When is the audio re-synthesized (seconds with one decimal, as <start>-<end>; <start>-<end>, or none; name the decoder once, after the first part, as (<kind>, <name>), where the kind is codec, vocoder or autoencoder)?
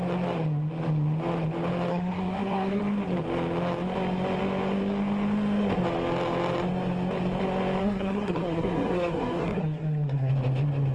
1.9-2.8 (codec, SNAC); 7.8-10.3